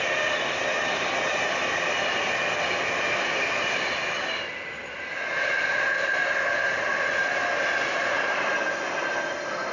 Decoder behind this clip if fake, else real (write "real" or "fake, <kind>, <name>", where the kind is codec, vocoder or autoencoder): real